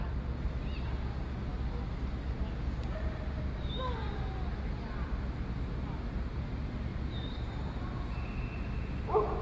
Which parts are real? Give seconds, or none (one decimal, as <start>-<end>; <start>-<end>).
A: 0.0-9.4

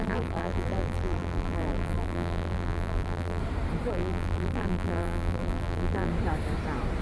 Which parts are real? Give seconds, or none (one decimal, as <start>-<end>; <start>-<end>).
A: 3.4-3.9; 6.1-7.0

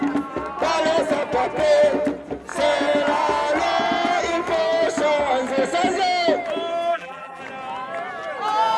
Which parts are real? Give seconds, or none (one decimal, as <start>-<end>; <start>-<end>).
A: 0.0-6.9; 7.4-8.8

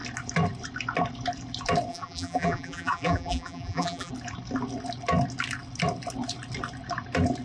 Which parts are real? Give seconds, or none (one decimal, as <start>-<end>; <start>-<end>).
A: 0.0-1.9; 4.1-7.4

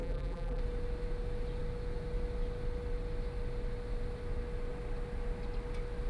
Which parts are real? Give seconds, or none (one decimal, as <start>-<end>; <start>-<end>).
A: 0.6-6.1

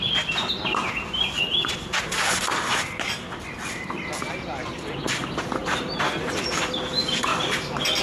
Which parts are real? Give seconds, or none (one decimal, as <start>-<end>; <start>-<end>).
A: 0.0-0.8; 1.5-5.6; 6.6-8.0

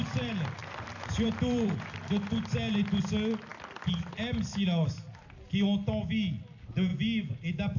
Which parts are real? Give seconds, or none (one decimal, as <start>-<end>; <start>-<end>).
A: 0.0-0.6; 1.9-7.8

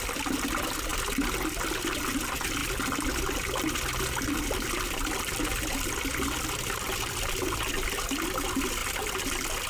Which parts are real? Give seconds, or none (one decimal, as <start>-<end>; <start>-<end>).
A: 0.0-9.7